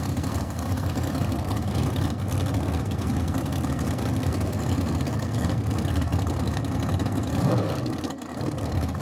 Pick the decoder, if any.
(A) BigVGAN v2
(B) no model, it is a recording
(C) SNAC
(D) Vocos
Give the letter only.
C